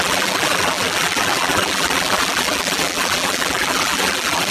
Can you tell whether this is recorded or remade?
remade